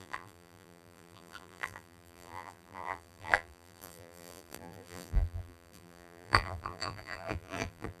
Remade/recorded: remade